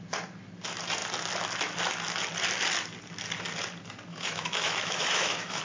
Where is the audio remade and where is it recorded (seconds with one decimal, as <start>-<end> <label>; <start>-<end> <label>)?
0.0-4.1 recorded; 4.1-5.6 remade